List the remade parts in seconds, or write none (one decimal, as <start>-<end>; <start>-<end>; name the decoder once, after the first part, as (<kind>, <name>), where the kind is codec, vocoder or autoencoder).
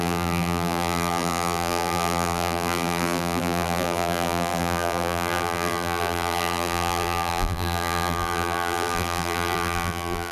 0.0-10.3 (vocoder, BigVGAN v2)